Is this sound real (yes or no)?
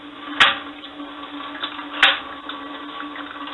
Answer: yes